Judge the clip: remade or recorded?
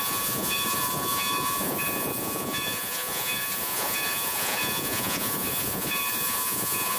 remade